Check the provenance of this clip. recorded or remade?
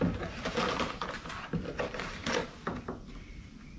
recorded